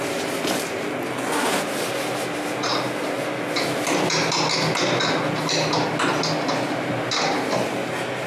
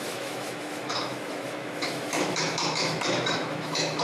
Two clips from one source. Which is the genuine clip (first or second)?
first